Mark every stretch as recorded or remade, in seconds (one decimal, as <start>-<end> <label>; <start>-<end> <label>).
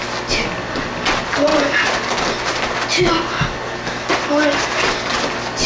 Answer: 0.0-5.7 recorded